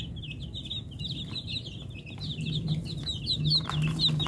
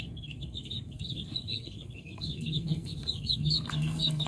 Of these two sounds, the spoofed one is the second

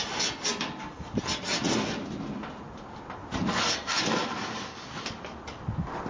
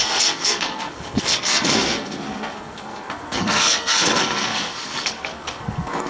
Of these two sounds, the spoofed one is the second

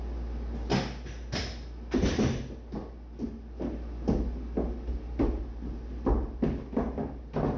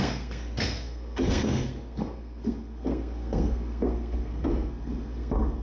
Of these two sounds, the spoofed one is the second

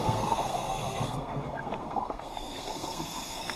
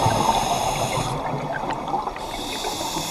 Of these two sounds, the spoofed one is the first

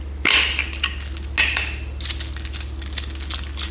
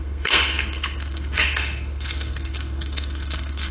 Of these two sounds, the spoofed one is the second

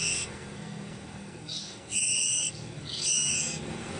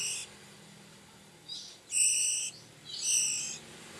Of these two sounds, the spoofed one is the first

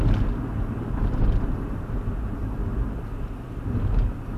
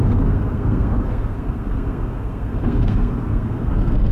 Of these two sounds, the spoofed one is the second